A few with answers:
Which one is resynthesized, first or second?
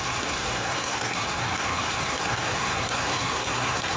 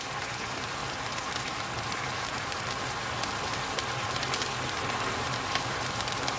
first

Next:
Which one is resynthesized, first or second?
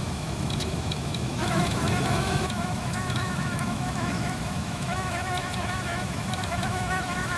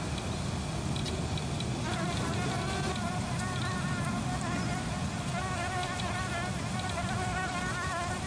first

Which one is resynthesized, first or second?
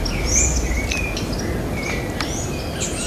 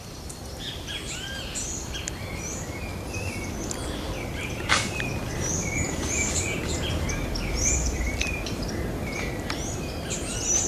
second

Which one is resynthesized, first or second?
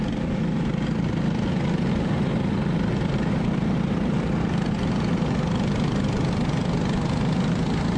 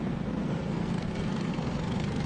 second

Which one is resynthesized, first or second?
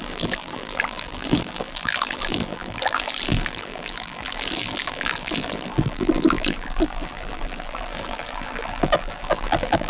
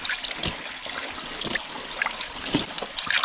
first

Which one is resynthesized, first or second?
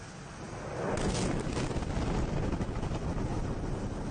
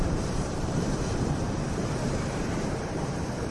second